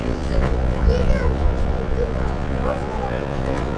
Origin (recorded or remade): remade